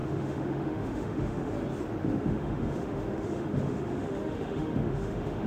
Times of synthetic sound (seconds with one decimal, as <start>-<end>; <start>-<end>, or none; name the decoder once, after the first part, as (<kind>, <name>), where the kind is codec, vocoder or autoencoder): 0.0-1.5 (autoencoder, DAC-VAE); 2.0-5.5